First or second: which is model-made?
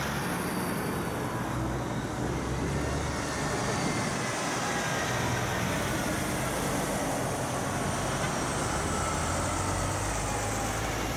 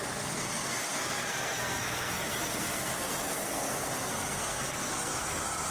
second